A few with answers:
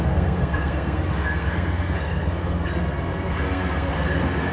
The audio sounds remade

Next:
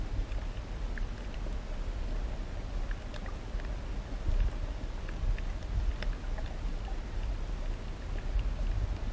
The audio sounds recorded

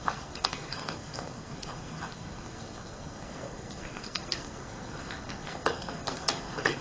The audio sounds remade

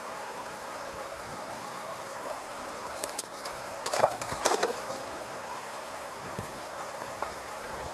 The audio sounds remade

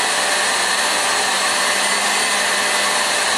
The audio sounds recorded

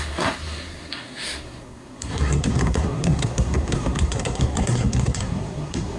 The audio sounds remade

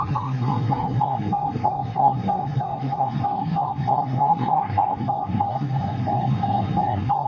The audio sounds remade